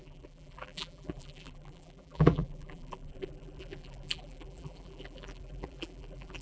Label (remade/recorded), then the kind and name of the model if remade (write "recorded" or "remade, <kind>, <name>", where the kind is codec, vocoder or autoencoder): remade, vocoder, BigVGAN v2